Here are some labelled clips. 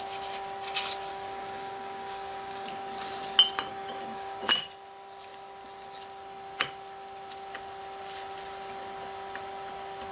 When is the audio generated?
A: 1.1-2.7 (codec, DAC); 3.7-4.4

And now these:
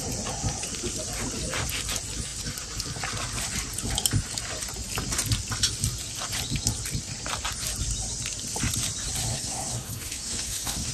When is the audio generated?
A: 9.3-10.9 (codec, SNAC)

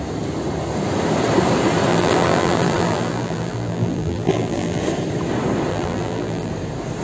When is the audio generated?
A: 1.9-4.8 (vocoder, BigVGAN v2); 5.7-6.5

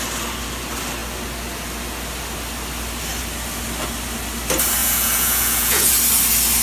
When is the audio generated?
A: 4.8-5.9 (vocoder, Vocos)